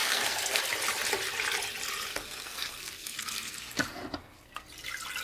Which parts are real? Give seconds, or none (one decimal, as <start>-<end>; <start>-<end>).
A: 0.6-2.1; 4.7-5.2